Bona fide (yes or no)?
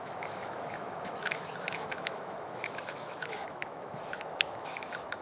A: no